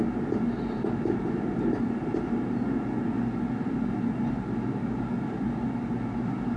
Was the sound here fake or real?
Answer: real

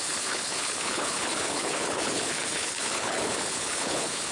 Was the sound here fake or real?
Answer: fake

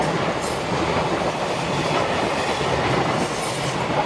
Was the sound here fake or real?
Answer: real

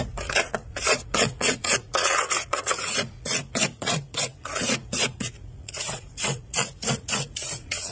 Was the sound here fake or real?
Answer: fake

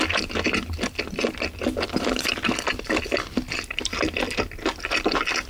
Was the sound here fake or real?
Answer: real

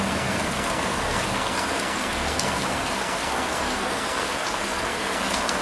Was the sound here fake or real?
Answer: fake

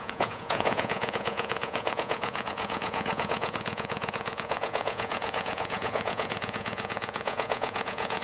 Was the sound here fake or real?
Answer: fake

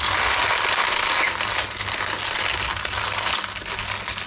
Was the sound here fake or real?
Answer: real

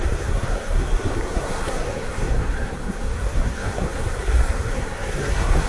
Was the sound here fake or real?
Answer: fake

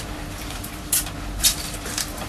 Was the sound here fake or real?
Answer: fake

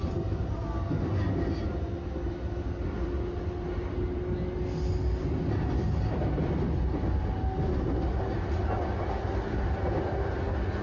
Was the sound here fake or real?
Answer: real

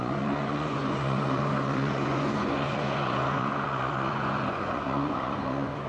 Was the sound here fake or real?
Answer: fake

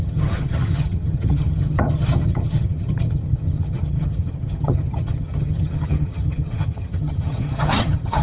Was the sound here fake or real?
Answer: fake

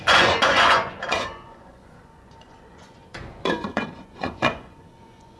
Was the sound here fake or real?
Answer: fake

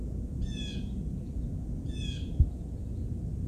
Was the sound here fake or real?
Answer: fake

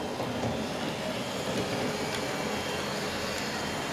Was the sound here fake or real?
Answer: real